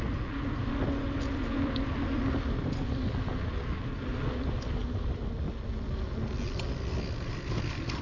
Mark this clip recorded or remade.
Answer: recorded